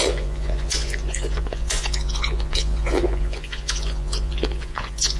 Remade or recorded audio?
remade